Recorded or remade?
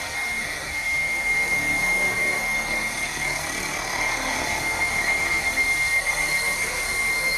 remade